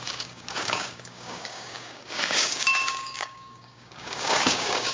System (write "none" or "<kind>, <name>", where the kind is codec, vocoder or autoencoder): codec, DAC